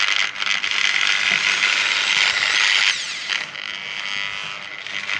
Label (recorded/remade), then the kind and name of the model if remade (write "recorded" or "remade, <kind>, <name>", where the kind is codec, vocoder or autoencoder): recorded